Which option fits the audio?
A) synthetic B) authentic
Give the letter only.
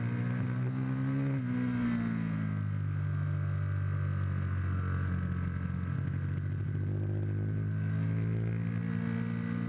B